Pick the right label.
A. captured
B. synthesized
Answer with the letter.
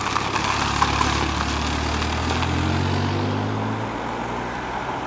A